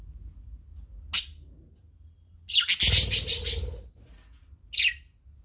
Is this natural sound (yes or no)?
yes